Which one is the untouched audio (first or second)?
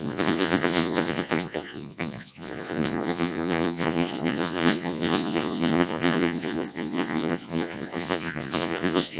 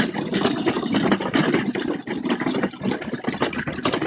second